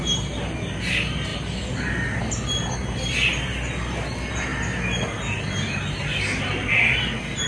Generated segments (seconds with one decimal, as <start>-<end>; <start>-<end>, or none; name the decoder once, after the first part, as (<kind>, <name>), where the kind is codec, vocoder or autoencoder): none